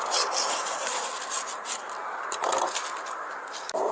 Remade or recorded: recorded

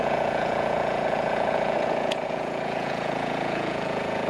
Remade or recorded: remade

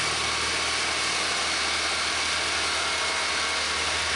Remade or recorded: recorded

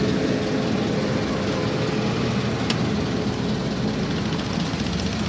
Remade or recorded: recorded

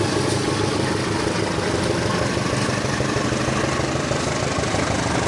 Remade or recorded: recorded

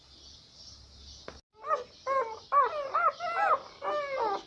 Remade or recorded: recorded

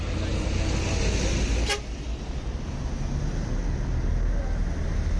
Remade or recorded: recorded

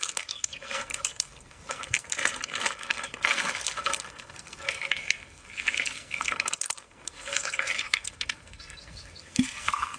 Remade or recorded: remade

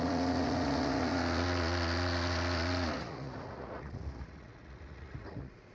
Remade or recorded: remade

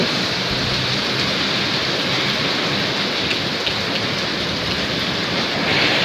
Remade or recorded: recorded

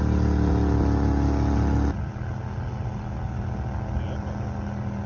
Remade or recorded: recorded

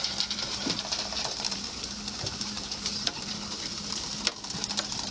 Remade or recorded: remade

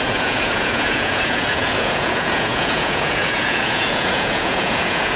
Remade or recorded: remade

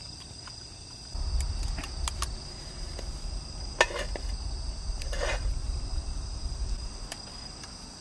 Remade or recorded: recorded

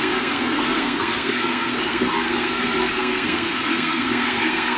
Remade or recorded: remade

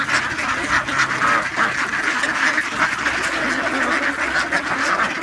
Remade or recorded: recorded